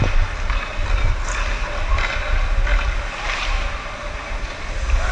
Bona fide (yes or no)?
yes